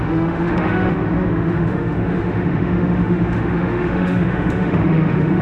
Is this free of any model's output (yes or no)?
no